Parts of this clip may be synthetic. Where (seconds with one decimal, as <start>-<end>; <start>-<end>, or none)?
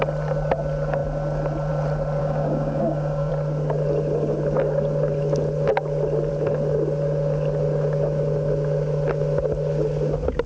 2.2-3.3